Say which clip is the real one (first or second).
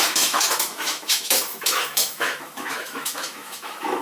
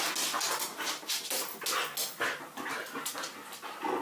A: second